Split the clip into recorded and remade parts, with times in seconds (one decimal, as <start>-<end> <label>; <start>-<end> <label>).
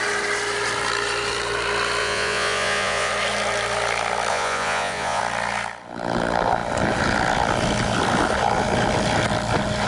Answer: 0.0-2.0 recorded; 2.0-3.1 remade; 3.1-4.3 recorded; 4.3-5.2 remade; 5.2-9.9 recorded